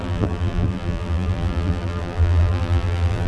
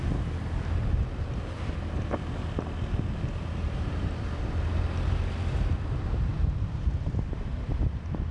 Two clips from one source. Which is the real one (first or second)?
second